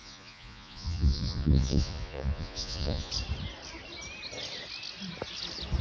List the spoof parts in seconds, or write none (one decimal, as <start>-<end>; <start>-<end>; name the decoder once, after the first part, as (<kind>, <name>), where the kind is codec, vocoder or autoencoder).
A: 0.0-3.1 (vocoder, Vocos)